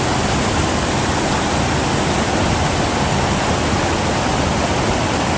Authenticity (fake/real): real